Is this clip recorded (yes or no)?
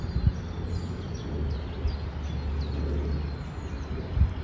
yes